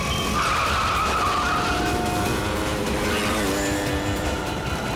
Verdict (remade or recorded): recorded